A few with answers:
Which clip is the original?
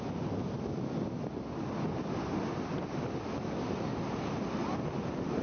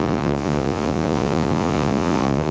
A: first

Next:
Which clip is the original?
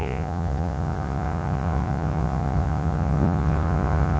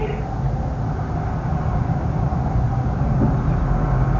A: second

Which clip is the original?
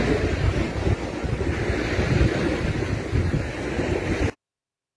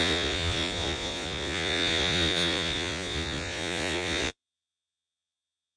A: first